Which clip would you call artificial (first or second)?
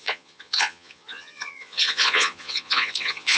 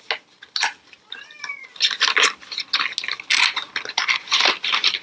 first